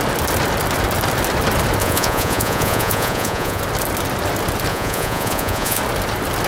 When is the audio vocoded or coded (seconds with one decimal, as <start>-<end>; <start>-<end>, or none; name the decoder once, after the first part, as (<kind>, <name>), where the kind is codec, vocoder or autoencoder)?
1.8-3.6 (vocoder, Vocos); 4.7-5.8